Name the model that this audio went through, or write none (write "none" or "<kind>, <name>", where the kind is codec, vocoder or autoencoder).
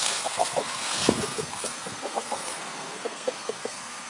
codec, SNAC